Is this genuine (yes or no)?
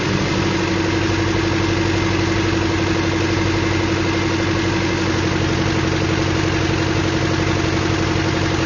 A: yes